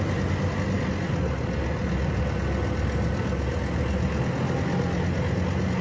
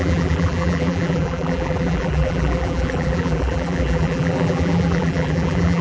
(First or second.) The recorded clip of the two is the first